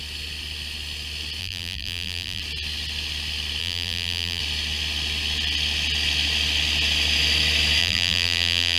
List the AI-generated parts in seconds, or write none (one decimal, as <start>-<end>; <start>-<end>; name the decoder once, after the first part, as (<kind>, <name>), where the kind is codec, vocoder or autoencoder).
1.4-2.4 (vocoder, BigVGAN v2); 3.6-4.4; 7.8-8.8